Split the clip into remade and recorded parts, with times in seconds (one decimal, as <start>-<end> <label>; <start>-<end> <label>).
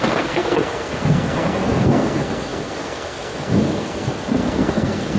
0.0-5.2 remade